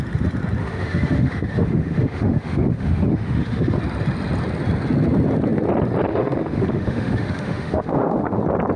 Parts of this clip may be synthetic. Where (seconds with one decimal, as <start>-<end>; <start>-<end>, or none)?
0.6-3.8; 6.1-8.4

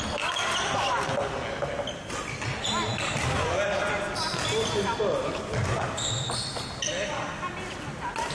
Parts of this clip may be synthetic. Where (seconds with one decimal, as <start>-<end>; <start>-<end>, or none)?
none

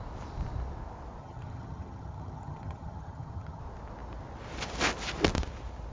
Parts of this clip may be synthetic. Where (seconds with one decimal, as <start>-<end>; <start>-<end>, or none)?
1.2-3.6